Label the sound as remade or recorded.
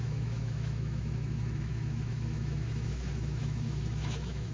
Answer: remade